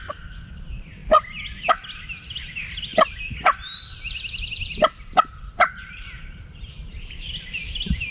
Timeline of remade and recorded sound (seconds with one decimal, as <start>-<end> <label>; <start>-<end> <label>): 0.0-2.9 recorded; 2.9-5.0 remade; 5.0-8.1 recorded